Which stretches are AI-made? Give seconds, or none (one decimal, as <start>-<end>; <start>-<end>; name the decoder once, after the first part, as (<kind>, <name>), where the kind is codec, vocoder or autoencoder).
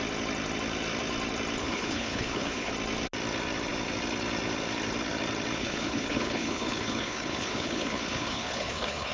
1.6-2.7 (codec, HILCodec); 5.6-9.1